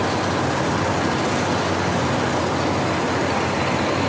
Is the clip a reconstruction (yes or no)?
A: no